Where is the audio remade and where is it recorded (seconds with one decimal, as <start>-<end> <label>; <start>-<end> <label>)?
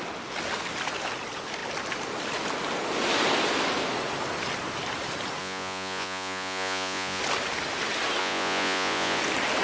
0.0-5.4 recorded; 5.4-7.2 remade; 7.2-8.2 recorded; 8.2-9.2 remade; 9.2-9.6 recorded